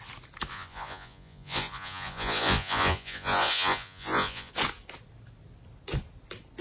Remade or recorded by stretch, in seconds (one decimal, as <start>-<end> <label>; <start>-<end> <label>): 0.0-0.5 recorded; 0.5-4.5 remade; 4.5-6.6 recorded